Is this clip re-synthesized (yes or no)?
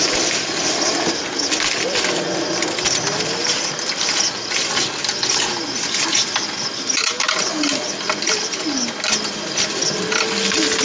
no